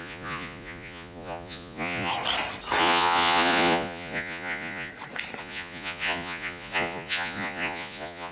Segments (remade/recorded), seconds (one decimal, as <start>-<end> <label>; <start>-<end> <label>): 0.0-2.1 remade; 2.1-2.8 recorded; 2.8-4.9 remade; 4.9-5.4 recorded; 5.4-8.3 remade